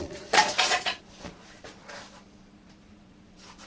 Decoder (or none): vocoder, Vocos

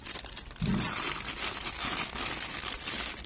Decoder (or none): none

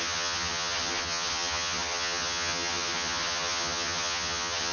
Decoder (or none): vocoder, HiFi-GAN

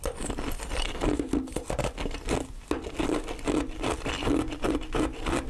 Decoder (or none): none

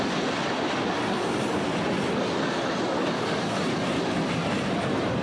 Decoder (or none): none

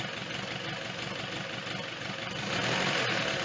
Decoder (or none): none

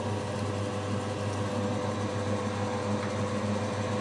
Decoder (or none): none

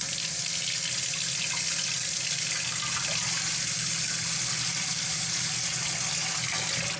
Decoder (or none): none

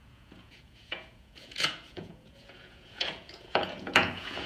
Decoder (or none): vocoder, Vocos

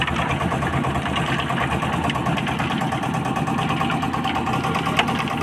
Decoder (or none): none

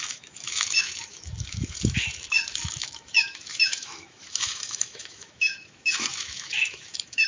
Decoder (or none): autoencoder, DAC-VAE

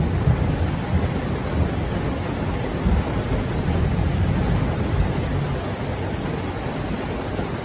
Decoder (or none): none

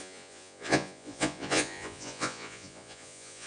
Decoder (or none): vocoder, Vocos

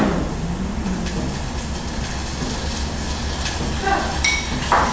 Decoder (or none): none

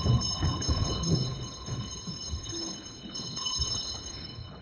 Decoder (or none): codec, HILCodec